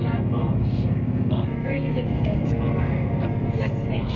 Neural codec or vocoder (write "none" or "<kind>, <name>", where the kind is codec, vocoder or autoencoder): codec, SNAC